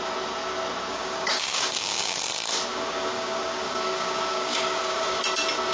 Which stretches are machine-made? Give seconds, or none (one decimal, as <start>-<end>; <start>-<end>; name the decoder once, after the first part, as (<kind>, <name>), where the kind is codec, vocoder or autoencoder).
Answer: 0.9-2.2 (codec, DAC); 2.7-5.2